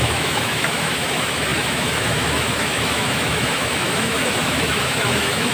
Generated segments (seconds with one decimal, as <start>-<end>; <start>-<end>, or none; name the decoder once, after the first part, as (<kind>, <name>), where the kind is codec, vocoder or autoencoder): 0.0-5.5 (autoencoder, DAC-VAE)